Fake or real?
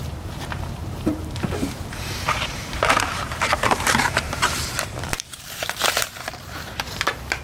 fake